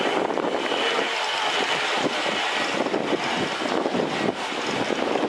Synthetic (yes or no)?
no